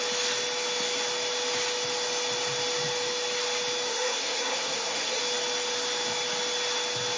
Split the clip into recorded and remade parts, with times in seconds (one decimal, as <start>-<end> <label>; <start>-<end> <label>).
0.0-3.9 recorded; 3.9-5.2 remade; 5.2-7.2 recorded